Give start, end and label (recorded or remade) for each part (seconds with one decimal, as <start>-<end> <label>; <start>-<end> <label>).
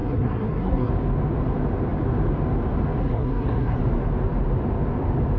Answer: 0.0-0.9 remade; 0.9-3.0 recorded; 3.0-3.8 remade; 3.8-5.4 recorded